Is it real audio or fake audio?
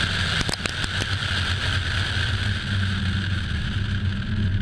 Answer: real